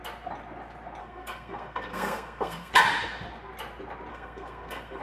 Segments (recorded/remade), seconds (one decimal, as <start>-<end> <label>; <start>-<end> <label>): 0.0-1.0 recorded; 1.0-2.7 remade; 2.7-4.1 recorded; 4.1-5.0 remade